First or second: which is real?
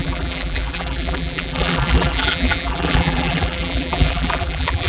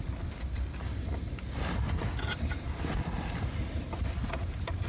second